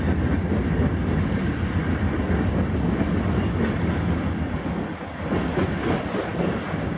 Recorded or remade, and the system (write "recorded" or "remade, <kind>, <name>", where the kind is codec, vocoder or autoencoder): recorded